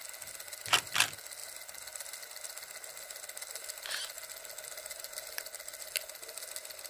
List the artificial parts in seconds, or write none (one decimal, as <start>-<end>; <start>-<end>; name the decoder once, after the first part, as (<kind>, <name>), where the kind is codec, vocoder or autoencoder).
none